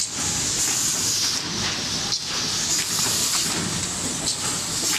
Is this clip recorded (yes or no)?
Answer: yes